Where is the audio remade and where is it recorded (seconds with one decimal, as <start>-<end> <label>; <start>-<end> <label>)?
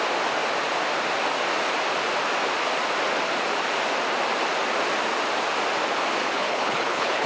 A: 0.0-6.2 recorded; 6.2-7.3 remade